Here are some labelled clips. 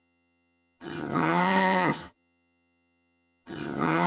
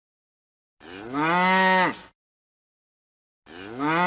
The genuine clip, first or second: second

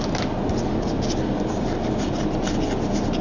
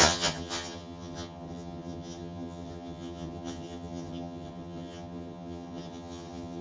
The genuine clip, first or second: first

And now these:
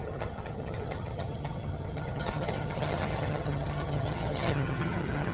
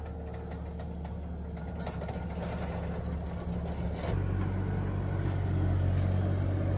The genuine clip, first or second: second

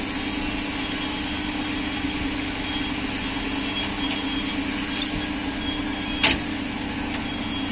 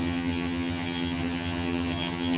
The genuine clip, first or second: first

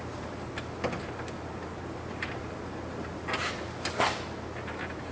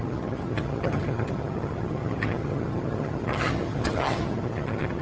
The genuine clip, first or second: first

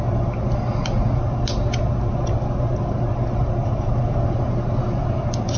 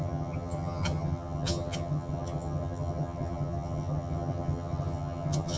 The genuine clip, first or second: first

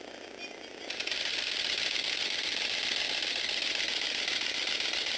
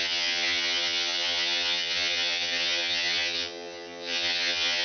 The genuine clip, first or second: first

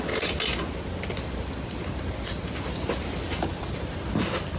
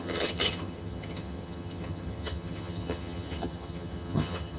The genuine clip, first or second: first